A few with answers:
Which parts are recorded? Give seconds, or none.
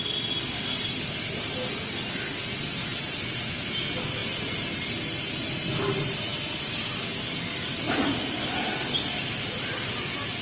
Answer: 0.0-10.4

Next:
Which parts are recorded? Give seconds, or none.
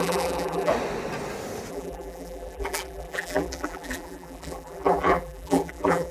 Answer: 0.7-1.7